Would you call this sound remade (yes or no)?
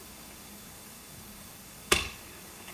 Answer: yes